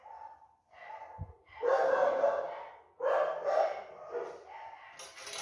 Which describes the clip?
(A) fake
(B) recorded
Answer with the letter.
B